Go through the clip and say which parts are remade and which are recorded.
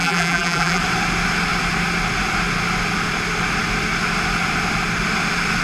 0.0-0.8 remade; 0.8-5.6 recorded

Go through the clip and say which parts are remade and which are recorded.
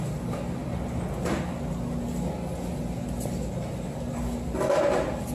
0.0-5.3 recorded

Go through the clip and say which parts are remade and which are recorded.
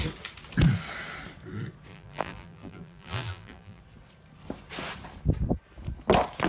0.0-1.9 recorded; 1.9-3.8 remade; 3.8-6.5 recorded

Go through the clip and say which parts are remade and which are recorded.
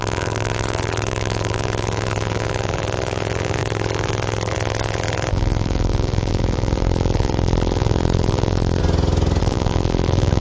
0.0-8.8 remade; 8.8-9.4 recorded; 9.4-10.4 remade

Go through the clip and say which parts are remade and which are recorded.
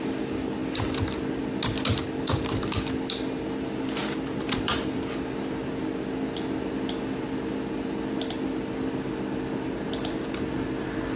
0.0-4.0 recorded; 4.0-5.7 remade; 5.7-11.2 recorded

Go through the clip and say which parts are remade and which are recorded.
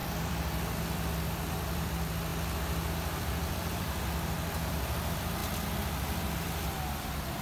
0.0-2.3 remade; 2.3-2.9 recorded; 2.9-5.4 remade; 5.4-6.0 recorded; 6.0-7.4 remade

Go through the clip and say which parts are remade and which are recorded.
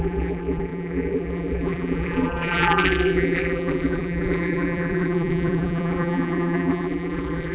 0.0-7.5 remade